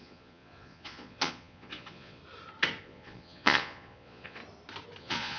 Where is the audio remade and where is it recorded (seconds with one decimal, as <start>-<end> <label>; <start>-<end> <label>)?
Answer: 0.0-2.2 remade; 2.2-2.8 recorded; 2.8-4.4 remade; 4.4-5.0 recorded; 5.0-5.4 remade